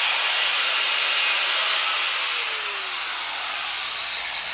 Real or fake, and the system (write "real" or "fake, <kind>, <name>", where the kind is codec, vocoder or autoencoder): real